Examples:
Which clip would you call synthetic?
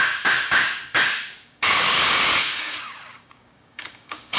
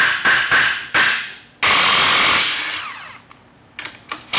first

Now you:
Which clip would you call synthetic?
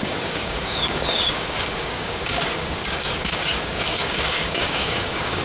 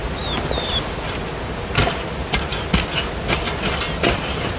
first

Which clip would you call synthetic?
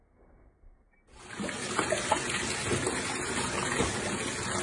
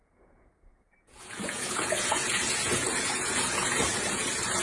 second